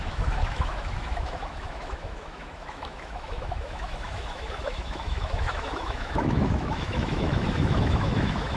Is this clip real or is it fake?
fake